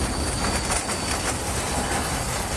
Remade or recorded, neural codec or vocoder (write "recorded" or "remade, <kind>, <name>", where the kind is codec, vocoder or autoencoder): recorded